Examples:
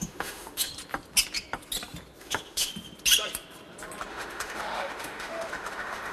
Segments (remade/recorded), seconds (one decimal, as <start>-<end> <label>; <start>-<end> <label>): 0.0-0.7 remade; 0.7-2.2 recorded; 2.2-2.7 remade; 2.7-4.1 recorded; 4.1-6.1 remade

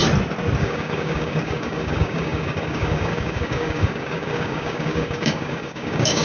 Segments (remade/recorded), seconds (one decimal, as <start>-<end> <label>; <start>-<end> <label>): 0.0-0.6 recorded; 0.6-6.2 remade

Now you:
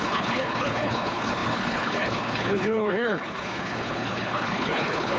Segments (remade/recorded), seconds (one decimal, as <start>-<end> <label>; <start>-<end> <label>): 0.0-5.2 remade